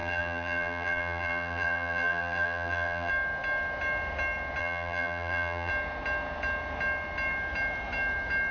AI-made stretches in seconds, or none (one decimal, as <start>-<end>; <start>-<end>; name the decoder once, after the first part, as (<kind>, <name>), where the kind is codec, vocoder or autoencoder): 0.0-3.1 (vocoder, BigVGAN v2); 4.6-5.7